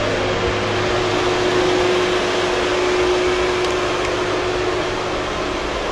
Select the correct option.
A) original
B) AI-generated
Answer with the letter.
A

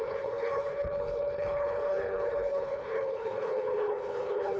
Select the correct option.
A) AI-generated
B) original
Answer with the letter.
A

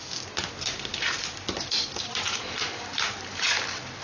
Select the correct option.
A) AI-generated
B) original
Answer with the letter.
B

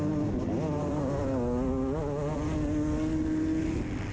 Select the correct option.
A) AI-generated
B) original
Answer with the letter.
B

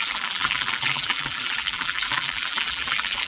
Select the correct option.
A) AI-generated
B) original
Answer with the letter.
A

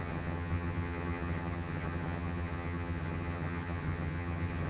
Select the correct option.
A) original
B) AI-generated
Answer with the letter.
B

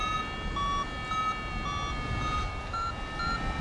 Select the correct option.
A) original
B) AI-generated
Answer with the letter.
A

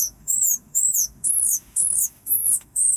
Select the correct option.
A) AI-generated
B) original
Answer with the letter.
A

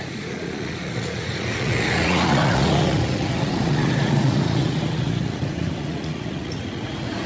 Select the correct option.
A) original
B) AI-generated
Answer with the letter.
B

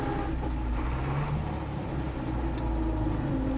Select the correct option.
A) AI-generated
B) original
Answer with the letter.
B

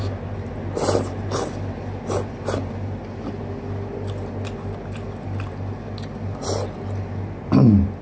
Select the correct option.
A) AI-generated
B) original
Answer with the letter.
B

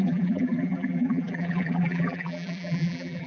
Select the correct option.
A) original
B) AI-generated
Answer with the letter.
B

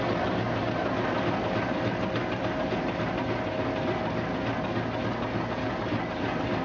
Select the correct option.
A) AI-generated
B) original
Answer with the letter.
B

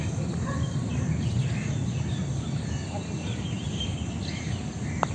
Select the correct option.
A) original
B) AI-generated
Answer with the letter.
A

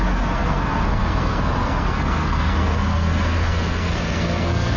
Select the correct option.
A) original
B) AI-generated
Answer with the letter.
B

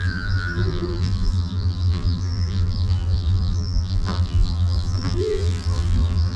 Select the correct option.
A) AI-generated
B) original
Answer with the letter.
A